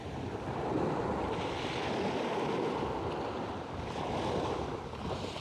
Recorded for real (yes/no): yes